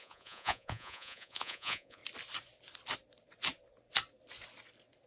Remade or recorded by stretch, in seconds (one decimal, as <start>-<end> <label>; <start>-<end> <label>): 0.0-2.0 remade; 2.0-5.1 recorded